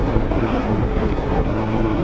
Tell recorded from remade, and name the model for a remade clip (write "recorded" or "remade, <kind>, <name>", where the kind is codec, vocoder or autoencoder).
remade, codec, SNAC